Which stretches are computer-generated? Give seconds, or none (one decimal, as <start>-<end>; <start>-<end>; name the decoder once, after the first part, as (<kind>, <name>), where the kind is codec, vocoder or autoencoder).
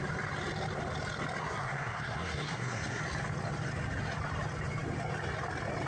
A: 1.4-3.0 (codec, SNAC)